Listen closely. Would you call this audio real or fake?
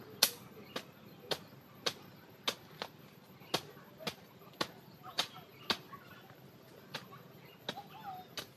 real